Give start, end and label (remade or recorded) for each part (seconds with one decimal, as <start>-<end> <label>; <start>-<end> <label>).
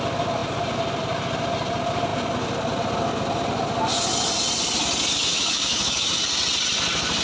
0.0-5.3 recorded; 5.3-6.2 remade; 6.2-7.2 recorded